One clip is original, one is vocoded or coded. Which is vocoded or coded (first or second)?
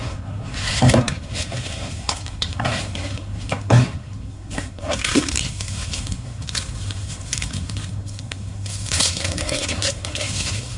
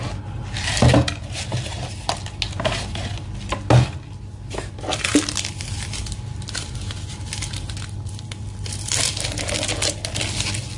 first